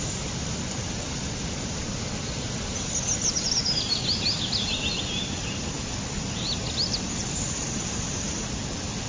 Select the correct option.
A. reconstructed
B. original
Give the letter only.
B